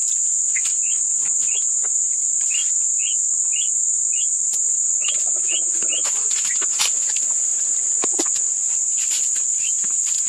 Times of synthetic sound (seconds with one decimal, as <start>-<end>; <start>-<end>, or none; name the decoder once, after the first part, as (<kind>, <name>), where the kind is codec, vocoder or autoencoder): 0.0-0.7 (vocoder, BigVGAN v2)